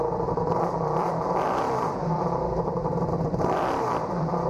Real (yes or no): no